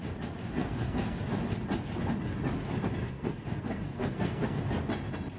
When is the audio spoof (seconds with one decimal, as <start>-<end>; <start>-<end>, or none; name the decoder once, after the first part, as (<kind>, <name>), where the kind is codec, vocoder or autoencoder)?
0.6-1.2 (codec, SNAC); 3.0-4.6